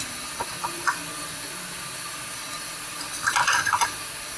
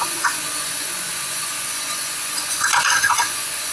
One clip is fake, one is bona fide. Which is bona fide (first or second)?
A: first